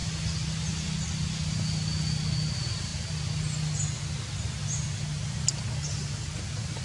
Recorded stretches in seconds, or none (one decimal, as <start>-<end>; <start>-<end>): 0.0-6.8